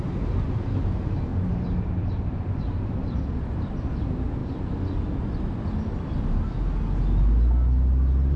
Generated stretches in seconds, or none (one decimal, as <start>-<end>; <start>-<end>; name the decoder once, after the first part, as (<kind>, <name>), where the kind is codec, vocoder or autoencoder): none